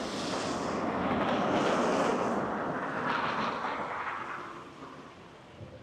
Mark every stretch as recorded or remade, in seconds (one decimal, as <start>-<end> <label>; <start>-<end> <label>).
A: 0.0-2.1 recorded; 2.1-2.7 remade; 2.7-5.8 recorded